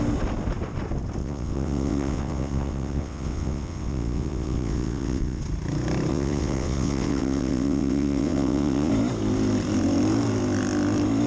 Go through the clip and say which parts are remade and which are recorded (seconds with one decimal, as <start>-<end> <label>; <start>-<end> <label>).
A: 0.0-1.2 recorded; 1.2-5.4 remade; 5.4-6.1 recorded; 6.1-8.9 remade; 8.9-11.3 recorded